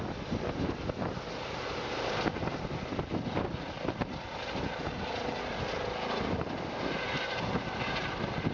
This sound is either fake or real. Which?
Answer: real